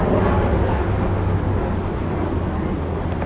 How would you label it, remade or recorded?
recorded